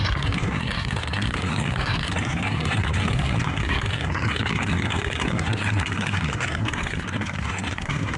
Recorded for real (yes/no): no